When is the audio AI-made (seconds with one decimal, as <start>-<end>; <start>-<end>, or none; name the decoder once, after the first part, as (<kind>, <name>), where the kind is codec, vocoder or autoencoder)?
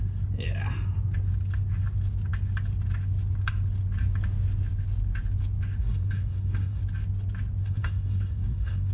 5.8-6.8 (codec, SNAC); 7.6-8.9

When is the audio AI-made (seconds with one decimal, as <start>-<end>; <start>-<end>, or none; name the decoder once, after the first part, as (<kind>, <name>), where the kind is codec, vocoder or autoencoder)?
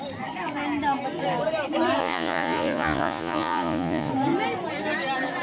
2.0-4.1 (vocoder, Vocos)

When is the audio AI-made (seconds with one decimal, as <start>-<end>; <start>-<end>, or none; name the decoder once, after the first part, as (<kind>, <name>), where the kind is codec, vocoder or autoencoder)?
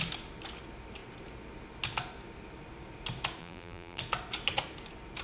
3.4-4.0 (vocoder, BigVGAN v2)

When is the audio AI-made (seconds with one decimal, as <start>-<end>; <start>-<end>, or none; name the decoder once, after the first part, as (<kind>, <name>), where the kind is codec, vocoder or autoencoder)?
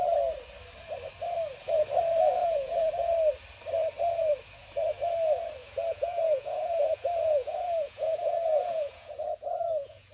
2.4-2.9 (vocoder, Vocos); 5.6-10.1